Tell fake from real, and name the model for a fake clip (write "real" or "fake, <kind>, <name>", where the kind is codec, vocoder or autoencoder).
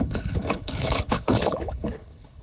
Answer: fake, codec, HILCodec